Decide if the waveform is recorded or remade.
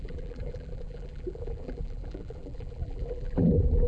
remade